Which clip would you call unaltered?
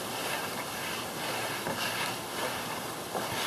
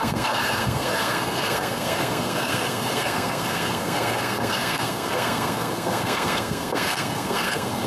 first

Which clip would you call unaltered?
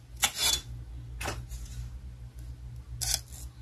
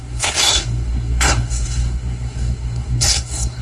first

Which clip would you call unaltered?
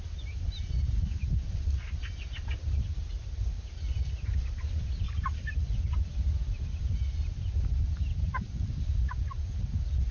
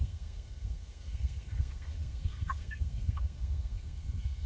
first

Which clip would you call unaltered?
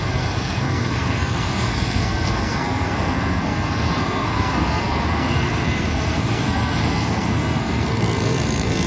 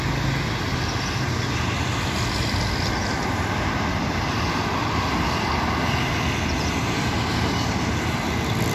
second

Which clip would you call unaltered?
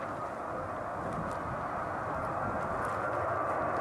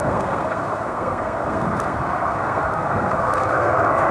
first